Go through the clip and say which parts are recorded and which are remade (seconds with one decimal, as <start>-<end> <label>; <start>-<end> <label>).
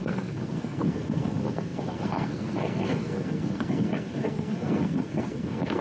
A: 0.0-5.8 remade